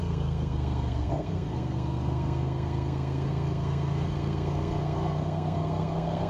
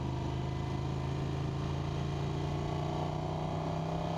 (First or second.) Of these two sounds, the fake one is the first